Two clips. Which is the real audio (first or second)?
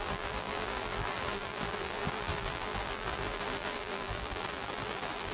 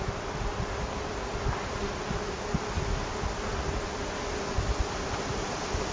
second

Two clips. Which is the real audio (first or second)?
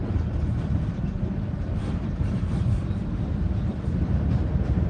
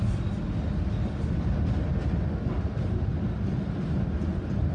second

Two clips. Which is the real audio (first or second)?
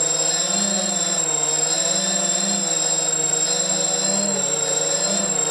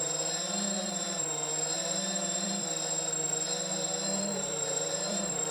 first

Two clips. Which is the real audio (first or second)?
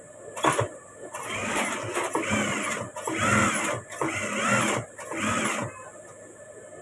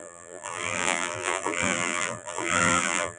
first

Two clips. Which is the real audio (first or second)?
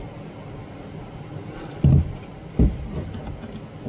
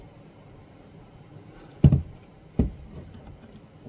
first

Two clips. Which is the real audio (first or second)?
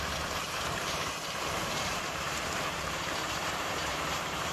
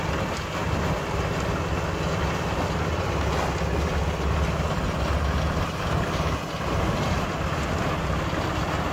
second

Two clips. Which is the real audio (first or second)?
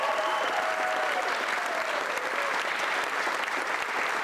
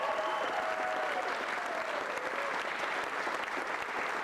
second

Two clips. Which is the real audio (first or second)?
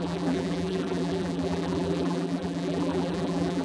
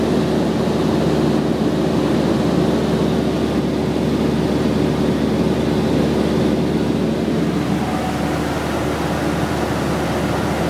second